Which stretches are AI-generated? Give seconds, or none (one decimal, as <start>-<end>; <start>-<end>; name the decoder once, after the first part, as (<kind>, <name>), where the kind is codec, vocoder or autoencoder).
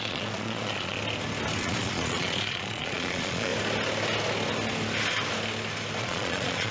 0.0-1.0 (vocoder, Vocos); 1.6-3.5; 6.0-6.7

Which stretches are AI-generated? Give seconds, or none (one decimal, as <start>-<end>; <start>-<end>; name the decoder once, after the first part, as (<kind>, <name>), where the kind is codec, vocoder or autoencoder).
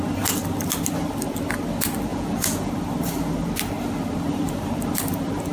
2.1-2.7 (vocoder, Vocos)